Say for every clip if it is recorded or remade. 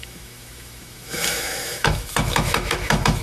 remade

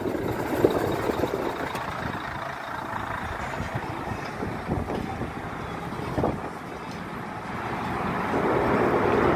recorded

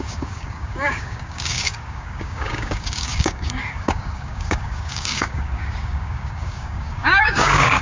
remade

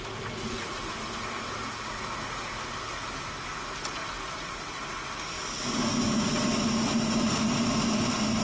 recorded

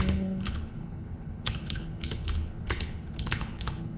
remade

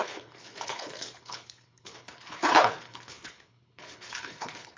remade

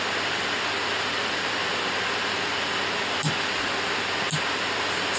recorded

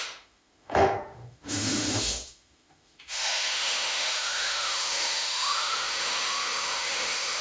remade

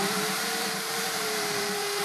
remade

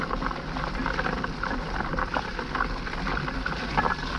recorded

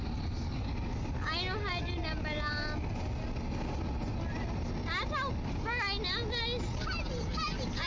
recorded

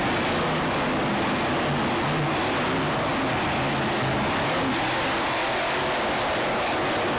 recorded